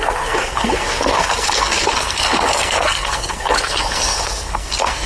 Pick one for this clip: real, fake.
fake